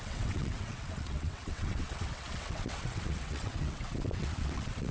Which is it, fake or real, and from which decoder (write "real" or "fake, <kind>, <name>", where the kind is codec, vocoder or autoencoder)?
fake, vocoder, WaveNeXt